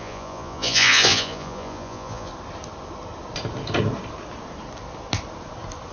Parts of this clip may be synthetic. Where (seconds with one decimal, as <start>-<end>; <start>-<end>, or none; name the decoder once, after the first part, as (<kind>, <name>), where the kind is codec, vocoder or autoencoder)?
0.0-2.3 (vocoder, Vocos)